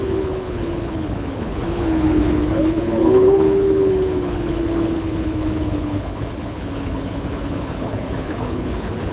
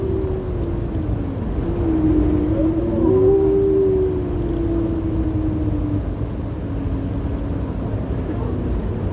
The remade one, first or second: first